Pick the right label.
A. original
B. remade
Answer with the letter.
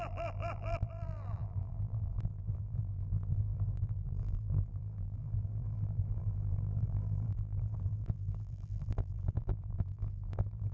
B